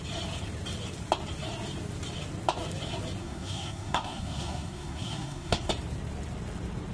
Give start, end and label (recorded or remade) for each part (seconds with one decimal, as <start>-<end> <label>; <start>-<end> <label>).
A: 0.0-3.2 recorded; 3.2-5.7 remade; 5.7-6.9 recorded